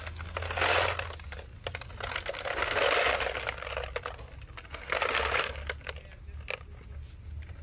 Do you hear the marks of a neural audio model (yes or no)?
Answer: no